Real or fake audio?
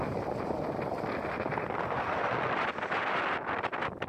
real